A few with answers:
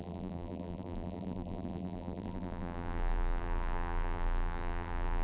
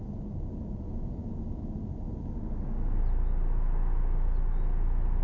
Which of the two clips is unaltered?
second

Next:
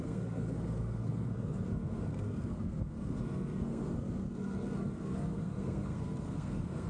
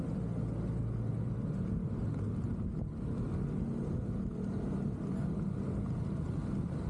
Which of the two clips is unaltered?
second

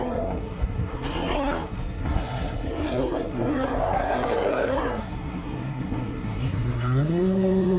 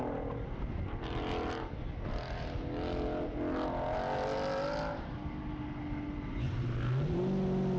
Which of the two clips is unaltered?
second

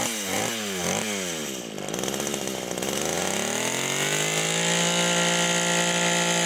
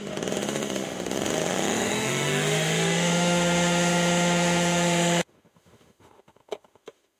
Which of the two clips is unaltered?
first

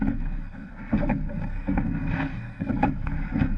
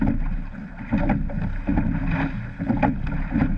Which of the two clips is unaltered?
second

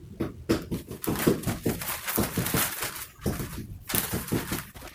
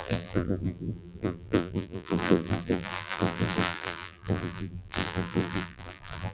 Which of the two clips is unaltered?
first